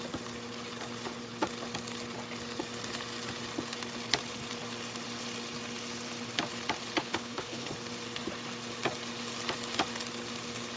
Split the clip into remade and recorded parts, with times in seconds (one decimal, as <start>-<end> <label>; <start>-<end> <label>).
0.0-7.0 recorded; 7.0-7.7 remade; 7.7-10.8 recorded